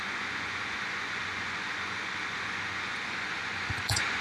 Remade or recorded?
remade